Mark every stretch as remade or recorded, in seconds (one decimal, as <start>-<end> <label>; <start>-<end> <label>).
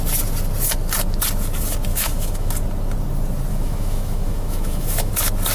0.0-1.9 recorded; 1.9-2.5 remade; 2.5-3.5 recorded; 3.5-5.1 remade; 5.1-5.5 recorded